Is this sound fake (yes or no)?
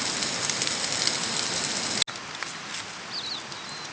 no